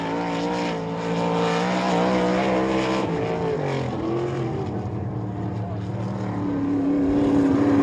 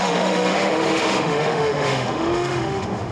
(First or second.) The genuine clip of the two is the first